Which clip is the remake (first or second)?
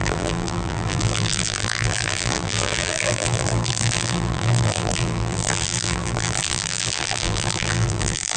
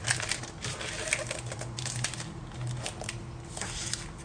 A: first